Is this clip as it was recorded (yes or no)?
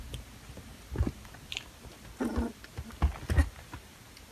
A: yes